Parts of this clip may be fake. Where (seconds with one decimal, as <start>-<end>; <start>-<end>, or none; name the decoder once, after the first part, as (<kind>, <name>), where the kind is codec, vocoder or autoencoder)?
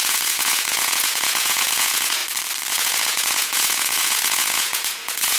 0.0-2.2 (vocoder, Vocos); 2.7-5.4